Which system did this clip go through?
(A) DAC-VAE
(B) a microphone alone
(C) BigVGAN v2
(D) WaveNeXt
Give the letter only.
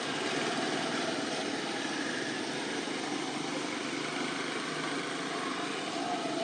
B